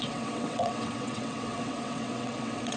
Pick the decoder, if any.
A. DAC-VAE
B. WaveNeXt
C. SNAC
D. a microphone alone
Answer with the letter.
B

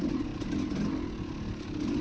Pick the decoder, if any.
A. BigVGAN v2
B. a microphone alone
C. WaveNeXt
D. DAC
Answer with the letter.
B